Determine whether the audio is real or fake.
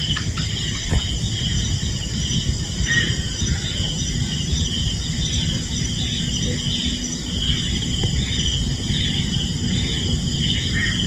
real